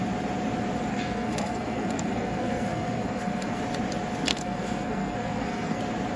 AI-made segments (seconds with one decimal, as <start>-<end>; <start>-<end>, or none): 0.9-3.6; 4.3-5.8